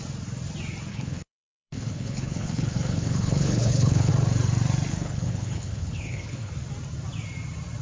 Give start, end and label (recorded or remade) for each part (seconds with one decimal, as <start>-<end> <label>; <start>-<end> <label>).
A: 0.0-0.9 recorded; 0.9-4.1 remade; 4.1-4.9 recorded; 4.9-6.5 remade; 6.5-7.8 recorded